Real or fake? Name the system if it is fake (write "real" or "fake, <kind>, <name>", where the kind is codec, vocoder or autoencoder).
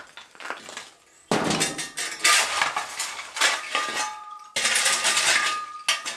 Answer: real